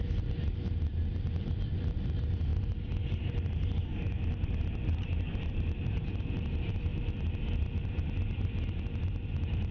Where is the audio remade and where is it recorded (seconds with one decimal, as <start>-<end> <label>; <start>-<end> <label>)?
0.0-9.7 remade